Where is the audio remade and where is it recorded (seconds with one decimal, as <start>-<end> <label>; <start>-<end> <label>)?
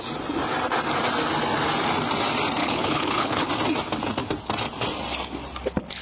0.0-2.6 recorded; 2.6-3.5 remade; 3.5-6.0 recorded